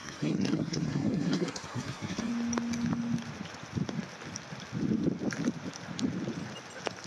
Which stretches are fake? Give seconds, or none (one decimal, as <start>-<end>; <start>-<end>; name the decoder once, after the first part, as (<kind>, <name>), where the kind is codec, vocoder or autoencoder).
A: 0.0-2.3 (codec, SNAC)